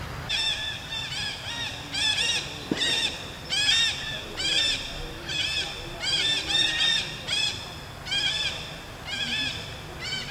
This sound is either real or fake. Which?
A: real